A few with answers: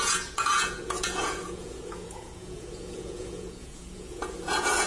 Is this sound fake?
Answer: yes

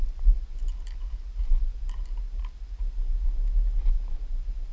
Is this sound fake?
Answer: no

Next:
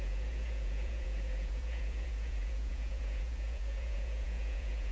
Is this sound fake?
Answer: yes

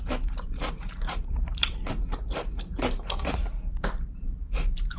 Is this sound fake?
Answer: yes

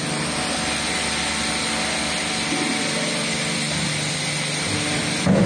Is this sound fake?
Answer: no